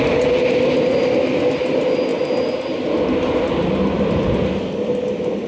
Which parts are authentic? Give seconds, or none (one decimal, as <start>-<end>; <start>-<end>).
0.0-5.5